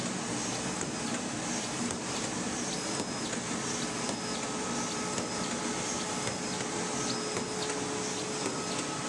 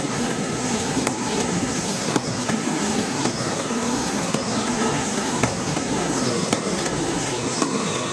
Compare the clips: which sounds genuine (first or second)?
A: first